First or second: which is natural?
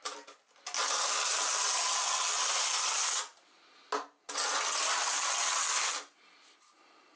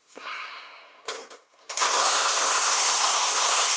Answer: first